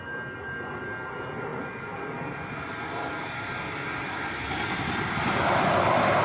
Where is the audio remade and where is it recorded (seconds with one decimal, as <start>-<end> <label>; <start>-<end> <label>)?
0.0-6.2 recorded